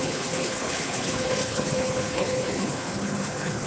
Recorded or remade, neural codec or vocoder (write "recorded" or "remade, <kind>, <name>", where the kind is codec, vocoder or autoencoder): remade, codec, HILCodec